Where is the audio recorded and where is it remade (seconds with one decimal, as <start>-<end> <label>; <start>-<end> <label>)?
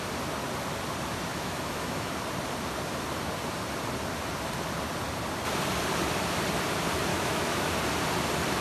0.0-1.3 recorded; 1.3-2.1 remade; 2.1-7.1 recorded; 7.1-7.7 remade; 7.7-8.6 recorded